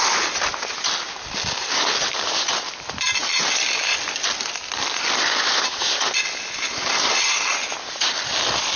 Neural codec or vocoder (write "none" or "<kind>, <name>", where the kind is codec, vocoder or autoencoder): none